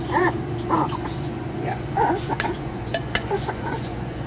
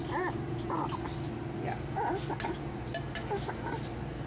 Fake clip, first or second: first